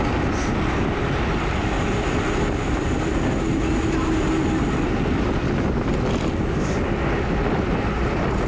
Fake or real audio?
real